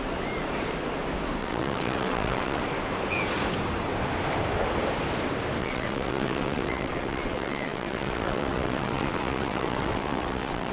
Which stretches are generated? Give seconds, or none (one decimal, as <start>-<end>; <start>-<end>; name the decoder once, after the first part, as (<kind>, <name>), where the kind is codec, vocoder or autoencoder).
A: 1.4-2.6 (vocoder, WaveNeXt); 5.6-10.7